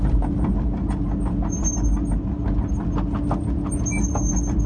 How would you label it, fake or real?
real